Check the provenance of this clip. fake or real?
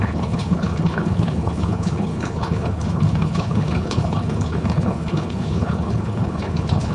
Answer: fake